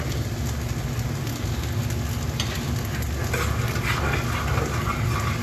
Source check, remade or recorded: recorded